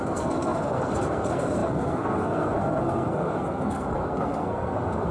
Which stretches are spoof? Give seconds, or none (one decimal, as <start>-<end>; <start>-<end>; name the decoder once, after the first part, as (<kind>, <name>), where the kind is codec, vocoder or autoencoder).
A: 0.0-5.1 (codec, SNAC)